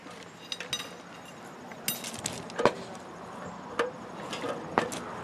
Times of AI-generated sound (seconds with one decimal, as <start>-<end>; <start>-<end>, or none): 0.0-0.5